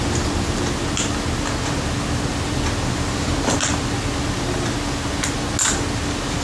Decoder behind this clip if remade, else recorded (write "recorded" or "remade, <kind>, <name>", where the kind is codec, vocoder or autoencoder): recorded